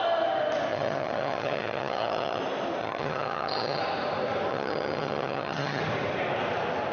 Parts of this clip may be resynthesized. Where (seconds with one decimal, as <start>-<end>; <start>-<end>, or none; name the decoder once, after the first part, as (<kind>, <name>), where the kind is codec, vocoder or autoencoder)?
0.7-2.4 (vocoder, HiFi-GAN); 2.8-3.8; 4.5-5.8